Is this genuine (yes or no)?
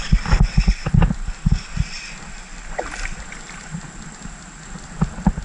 yes